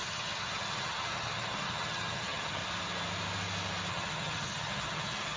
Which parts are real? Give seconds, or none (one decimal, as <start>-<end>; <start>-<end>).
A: 2.6-3.9